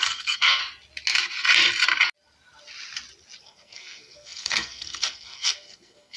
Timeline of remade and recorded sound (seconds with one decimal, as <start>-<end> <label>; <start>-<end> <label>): 0.0-0.6 remade; 0.6-3.4 recorded; 3.4-6.2 remade